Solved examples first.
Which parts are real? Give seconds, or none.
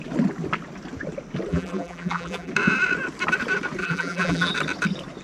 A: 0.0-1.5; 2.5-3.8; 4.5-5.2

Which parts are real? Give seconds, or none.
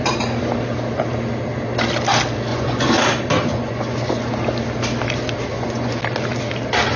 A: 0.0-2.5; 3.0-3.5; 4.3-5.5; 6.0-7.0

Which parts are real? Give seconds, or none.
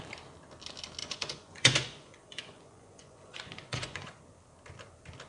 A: 0.0-1.0; 4.2-5.3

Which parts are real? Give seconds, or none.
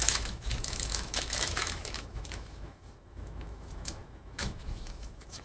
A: none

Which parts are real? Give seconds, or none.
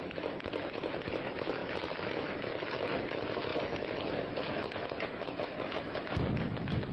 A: none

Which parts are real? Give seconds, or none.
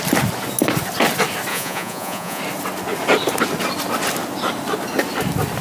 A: 0.0-1.5; 2.4-5.6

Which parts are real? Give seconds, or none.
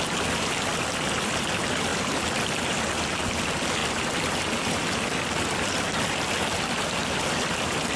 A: 0.0-7.0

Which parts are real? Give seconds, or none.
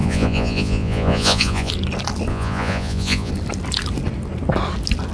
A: 1.7-2.3; 3.3-5.1